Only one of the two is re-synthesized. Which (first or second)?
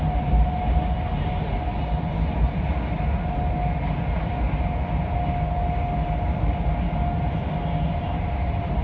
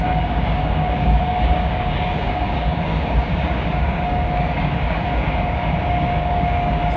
second